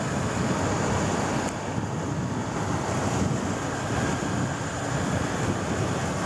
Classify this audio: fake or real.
real